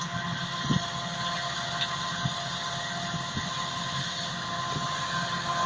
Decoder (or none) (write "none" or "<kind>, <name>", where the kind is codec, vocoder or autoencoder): none